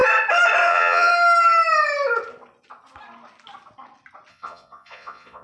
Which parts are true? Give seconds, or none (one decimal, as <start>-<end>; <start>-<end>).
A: 0.0-0.7; 1.1-4.3